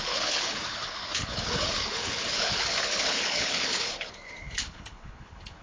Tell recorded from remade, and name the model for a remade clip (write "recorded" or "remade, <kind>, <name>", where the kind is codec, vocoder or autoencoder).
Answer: remade, codec, HILCodec